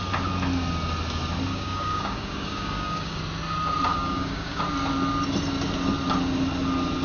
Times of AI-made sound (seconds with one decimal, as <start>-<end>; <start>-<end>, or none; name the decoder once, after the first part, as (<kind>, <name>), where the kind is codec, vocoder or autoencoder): 1.5-3.2 (codec, DAC); 3.9-4.6